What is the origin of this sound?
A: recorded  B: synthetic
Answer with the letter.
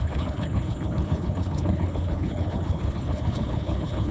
B